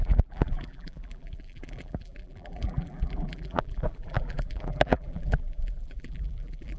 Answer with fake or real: fake